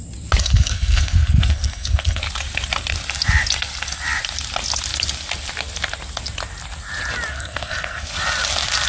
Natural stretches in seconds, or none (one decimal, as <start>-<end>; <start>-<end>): 0.0-0.4; 2.2-7.3; 8.1-8.9